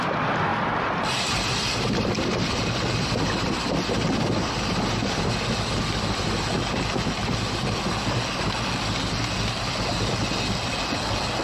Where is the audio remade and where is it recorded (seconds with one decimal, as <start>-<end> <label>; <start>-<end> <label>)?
0.0-11.4 recorded